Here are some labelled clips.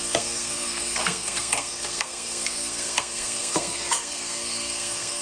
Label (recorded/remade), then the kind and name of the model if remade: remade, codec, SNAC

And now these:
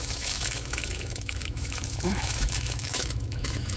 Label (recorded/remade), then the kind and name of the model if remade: remade, autoencoder, DAC-VAE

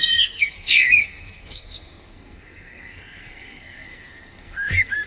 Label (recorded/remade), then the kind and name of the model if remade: remade, codec, SNAC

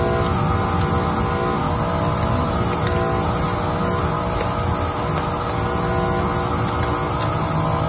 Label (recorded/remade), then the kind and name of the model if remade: recorded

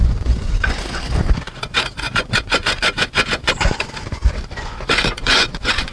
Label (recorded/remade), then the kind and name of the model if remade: remade, vocoder, Vocos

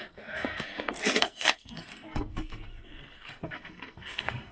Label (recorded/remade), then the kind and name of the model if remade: remade, codec, SNAC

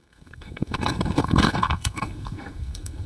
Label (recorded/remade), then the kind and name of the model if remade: remade, codec, SNAC